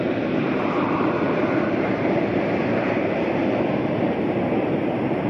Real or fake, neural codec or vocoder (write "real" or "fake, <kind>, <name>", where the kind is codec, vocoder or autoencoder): fake, vocoder, BigVGAN v2